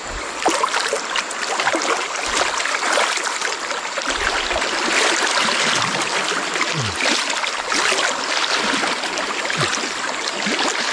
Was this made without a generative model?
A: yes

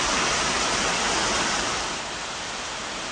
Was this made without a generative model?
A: yes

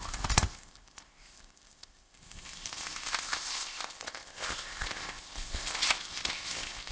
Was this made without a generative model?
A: no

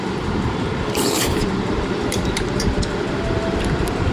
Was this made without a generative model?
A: no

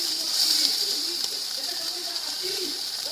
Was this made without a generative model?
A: no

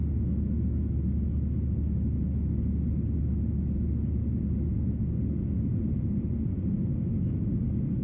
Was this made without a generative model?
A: yes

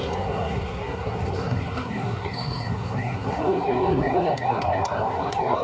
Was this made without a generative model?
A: no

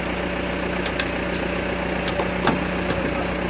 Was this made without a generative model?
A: yes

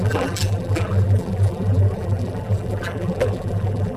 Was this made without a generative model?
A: no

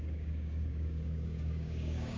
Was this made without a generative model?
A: no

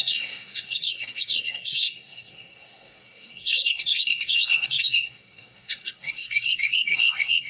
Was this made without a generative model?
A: no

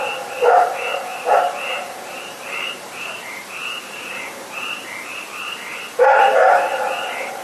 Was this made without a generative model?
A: no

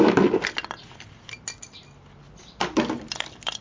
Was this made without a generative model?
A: yes